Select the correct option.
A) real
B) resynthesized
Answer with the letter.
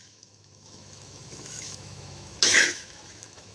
B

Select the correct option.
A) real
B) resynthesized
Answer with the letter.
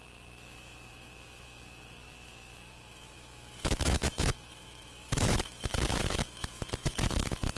B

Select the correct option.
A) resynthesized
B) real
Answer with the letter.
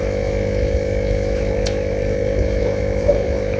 A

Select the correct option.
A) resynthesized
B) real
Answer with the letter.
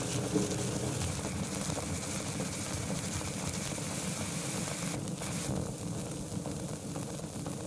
B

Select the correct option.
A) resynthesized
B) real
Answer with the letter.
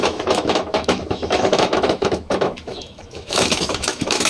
A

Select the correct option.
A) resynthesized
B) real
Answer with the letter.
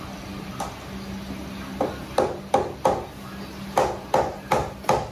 B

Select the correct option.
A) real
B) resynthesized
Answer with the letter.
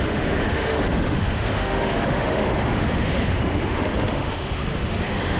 B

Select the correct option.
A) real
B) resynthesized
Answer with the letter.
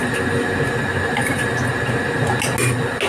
A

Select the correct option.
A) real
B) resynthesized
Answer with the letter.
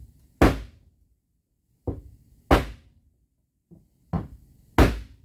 A